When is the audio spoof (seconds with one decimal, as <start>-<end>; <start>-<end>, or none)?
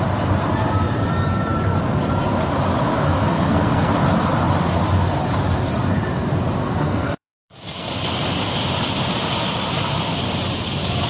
2.9-3.9; 6.6-7.9